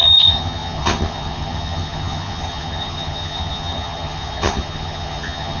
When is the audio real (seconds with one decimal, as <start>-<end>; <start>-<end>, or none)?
none